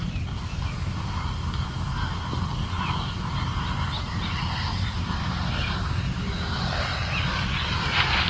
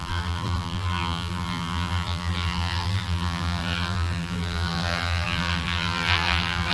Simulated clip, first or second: second